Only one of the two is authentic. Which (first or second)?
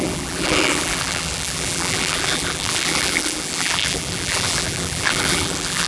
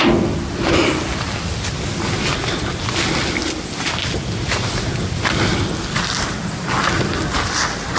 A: second